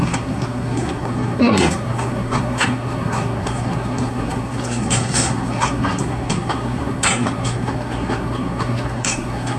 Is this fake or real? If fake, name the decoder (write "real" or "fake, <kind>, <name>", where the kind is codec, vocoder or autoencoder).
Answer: fake, codec, SNAC